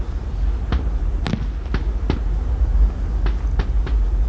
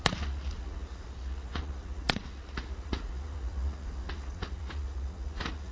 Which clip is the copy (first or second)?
second